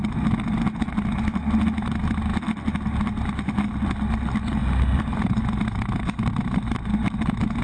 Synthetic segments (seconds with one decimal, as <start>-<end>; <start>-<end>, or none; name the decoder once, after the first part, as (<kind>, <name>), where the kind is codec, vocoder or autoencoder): none